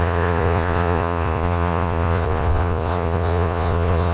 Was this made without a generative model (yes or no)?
no